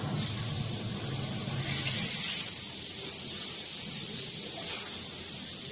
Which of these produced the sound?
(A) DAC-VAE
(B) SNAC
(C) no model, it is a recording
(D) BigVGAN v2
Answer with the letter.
C